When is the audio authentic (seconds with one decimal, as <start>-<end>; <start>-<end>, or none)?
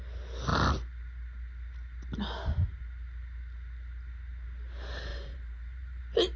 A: 0.0-5.1; 6.0-6.4